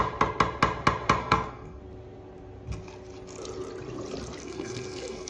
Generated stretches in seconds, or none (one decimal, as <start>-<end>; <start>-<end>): 1.2-1.8; 4.4-5.3